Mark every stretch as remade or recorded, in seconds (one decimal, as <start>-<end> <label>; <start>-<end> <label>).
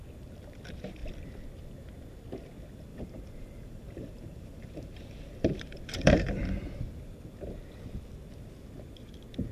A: 0.0-2.9 recorded; 2.9-6.8 remade; 6.8-9.5 recorded